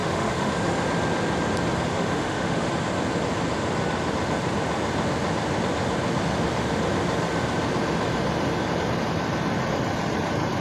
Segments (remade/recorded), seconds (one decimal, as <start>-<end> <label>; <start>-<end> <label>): 0.0-0.5 remade; 0.5-1.9 recorded; 1.9-2.7 remade; 2.7-10.6 recorded